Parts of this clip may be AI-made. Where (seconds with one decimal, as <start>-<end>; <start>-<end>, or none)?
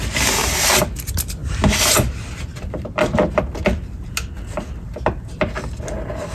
none